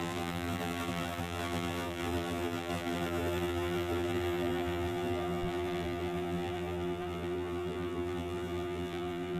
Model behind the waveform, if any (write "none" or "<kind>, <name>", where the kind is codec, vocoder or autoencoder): vocoder, BigVGAN v2